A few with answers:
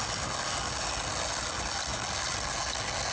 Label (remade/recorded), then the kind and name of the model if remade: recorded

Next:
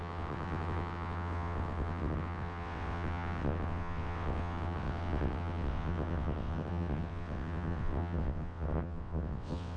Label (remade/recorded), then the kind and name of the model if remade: remade, vocoder, WaveNeXt